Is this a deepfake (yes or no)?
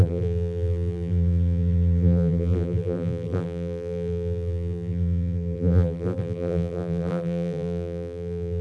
yes